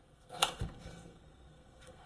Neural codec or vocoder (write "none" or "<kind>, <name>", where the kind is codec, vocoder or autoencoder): codec, SNAC